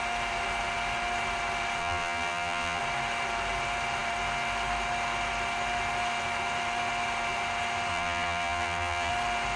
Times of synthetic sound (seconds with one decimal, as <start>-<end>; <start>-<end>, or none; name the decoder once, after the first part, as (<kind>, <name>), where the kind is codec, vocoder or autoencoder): 1.8-2.8 (vocoder, BigVGAN v2); 7.9-9.1